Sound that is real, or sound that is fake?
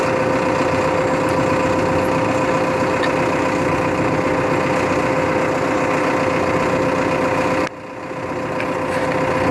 real